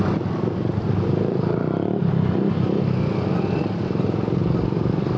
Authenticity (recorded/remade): recorded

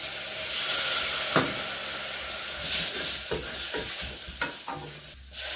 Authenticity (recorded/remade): recorded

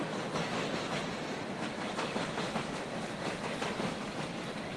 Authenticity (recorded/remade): recorded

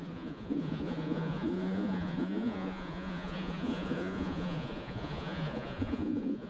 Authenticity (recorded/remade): remade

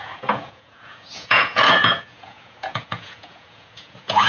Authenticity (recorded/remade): remade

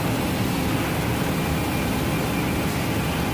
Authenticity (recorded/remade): recorded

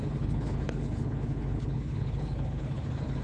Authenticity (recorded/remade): remade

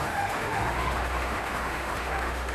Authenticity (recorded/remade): remade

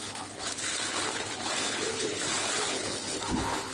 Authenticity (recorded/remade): remade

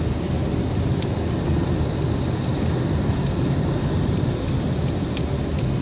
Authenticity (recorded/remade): recorded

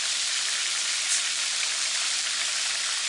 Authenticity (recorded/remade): recorded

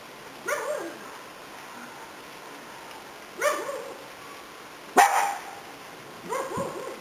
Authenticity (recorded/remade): recorded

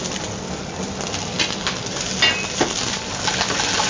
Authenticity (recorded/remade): recorded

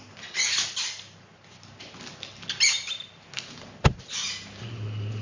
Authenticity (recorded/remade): recorded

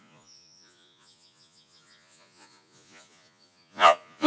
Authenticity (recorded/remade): remade